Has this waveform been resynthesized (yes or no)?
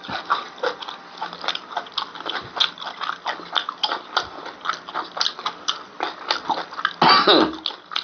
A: no